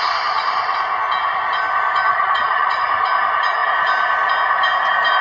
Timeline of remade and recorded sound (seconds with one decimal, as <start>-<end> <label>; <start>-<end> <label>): 0.0-2.1 recorded; 2.1-2.9 remade; 2.9-5.2 recorded